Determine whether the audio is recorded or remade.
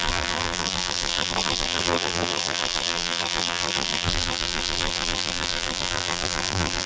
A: remade